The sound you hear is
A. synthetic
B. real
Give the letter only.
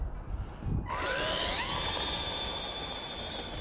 B